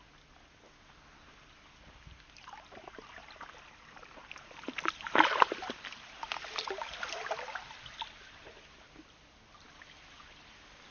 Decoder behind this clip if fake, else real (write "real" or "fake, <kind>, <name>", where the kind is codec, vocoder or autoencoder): real